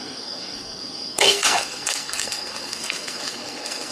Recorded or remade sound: remade